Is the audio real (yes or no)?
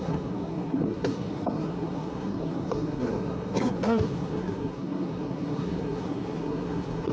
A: no